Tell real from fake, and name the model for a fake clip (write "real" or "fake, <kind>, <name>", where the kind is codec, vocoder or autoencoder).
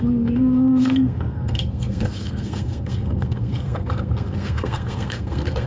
fake, codec, SNAC